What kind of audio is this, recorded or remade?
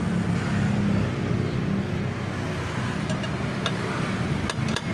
recorded